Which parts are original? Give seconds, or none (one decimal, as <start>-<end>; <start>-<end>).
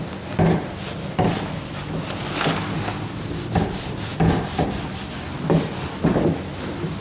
0.0-7.0